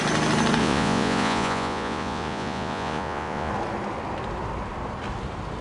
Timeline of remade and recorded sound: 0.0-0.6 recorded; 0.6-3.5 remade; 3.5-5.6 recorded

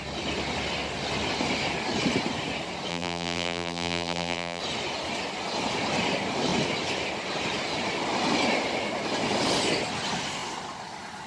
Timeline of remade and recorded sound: 0.0-2.9 recorded; 2.9-4.6 remade; 4.6-11.3 recorded

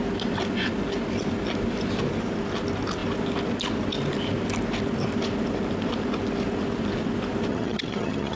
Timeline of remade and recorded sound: 0.0-7.5 recorded; 7.5-8.4 remade

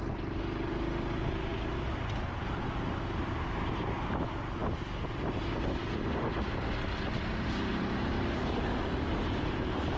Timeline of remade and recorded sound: 0.0-7.7 recorded; 7.7-10.0 remade

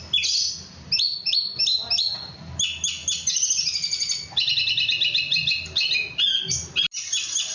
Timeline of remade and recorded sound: 0.0-7.5 recorded

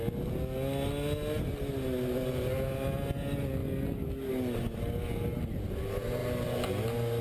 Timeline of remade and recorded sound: 0.0-7.2 recorded

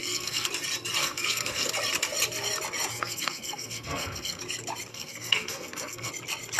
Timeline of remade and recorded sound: 0.0-0.5 remade; 0.5-1.0 recorded; 1.0-1.7 remade; 1.7-2.9 recorded; 2.9-4.4 remade; 4.4-4.9 recorded; 4.9-6.1 remade; 6.1-6.6 recorded

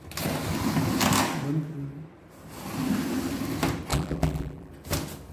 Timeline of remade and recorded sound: 0.0-3.9 recorded; 3.9-4.7 remade; 4.7-5.3 recorded